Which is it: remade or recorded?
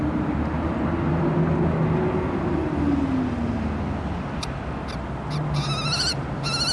recorded